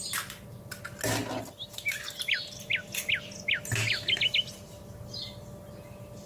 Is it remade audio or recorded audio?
recorded